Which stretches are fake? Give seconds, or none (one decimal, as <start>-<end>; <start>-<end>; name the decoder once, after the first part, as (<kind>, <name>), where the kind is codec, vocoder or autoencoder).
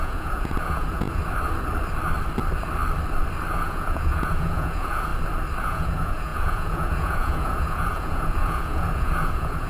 0.0-1.2 (vocoder, Vocos); 3.5-5.1; 5.6-9.7